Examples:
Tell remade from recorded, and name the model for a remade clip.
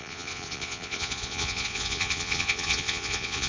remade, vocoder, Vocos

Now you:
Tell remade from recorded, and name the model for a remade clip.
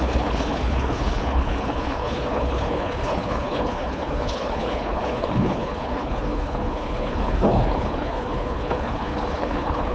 remade, codec, HILCodec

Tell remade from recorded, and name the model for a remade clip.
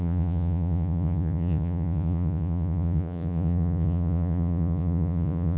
remade, vocoder, Vocos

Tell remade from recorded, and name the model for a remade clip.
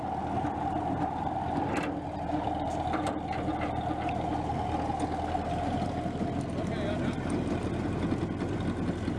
recorded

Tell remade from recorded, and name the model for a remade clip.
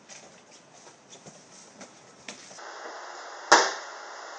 recorded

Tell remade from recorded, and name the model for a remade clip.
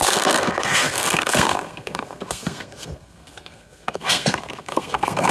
remade, codec, SNAC